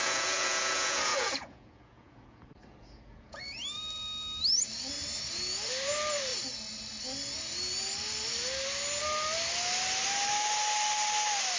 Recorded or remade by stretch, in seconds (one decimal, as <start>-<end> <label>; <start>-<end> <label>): 0.0-3.4 remade; 3.4-11.6 recorded